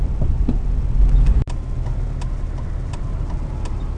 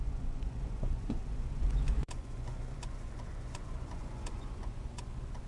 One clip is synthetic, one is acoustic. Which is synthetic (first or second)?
second